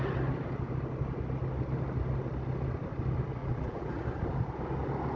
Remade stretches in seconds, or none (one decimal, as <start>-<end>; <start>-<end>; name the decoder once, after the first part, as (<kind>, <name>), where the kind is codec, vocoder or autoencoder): 3.4-4.0 (vocoder, BigVGAN v2)